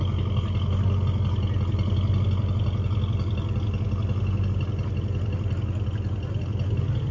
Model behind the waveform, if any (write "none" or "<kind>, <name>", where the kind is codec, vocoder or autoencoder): none